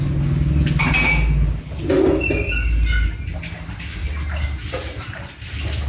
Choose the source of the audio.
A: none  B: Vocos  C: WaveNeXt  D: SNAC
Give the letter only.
A